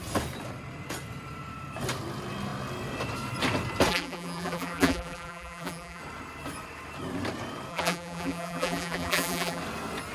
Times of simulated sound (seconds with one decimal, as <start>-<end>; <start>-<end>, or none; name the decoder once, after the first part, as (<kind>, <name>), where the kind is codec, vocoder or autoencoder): 3.9-6.0 (vocoder, BigVGAN v2); 7.7-9.6